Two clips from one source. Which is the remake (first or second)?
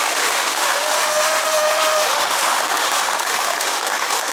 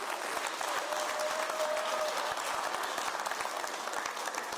first